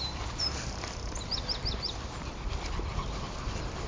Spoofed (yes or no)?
no